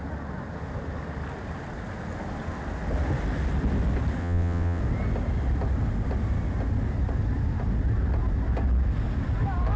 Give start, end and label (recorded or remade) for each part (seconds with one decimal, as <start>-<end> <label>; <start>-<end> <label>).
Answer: 0.0-4.2 recorded; 4.2-4.8 remade; 4.8-9.8 recorded